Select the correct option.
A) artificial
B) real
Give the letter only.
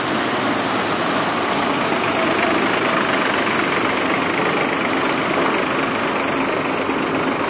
B